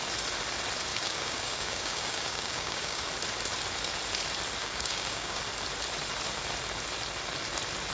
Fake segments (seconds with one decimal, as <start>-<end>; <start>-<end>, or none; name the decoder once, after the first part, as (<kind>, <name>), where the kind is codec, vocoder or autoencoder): 0.9-3.1 (codec, DAC); 4.6-5.4

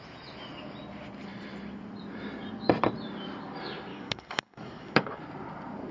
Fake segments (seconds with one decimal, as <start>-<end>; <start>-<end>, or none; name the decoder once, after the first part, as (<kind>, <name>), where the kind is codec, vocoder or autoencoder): 3.9-5.2 (codec, DAC)

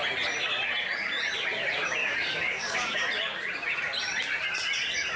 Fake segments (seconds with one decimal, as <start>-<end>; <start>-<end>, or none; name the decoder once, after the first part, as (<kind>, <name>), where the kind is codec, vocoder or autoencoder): 2.0-3.0 (codec, DAC)